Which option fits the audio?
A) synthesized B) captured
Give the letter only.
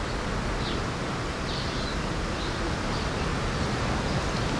B